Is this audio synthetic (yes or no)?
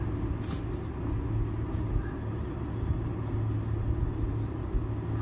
no